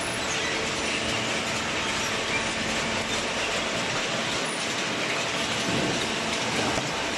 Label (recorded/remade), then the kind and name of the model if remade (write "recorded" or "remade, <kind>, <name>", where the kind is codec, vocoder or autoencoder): recorded